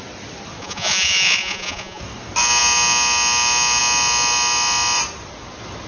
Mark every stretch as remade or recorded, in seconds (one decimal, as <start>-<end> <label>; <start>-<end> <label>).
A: 0.0-0.6 recorded; 0.6-2.0 remade; 2.0-5.9 recorded